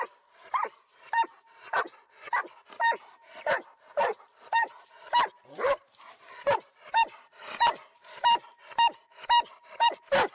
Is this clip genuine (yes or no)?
no